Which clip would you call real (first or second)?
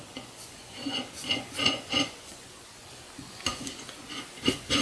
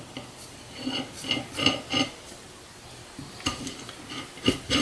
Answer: second